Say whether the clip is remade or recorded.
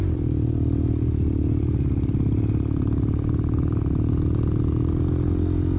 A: recorded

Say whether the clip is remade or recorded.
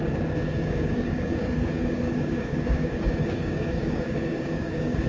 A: remade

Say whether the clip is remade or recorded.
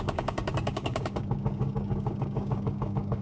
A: remade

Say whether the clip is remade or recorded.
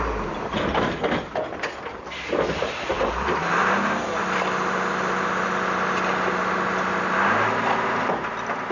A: recorded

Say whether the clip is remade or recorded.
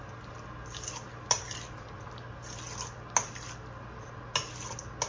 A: recorded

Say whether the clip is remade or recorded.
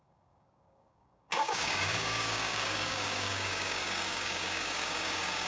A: remade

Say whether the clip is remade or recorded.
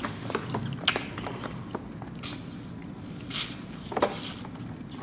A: recorded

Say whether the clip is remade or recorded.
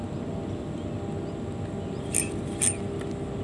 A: recorded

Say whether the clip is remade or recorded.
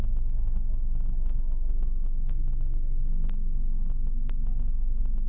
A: recorded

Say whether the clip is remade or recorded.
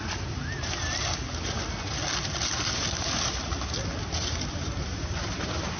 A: recorded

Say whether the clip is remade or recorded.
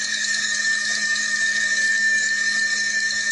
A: remade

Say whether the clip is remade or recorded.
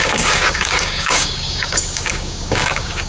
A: remade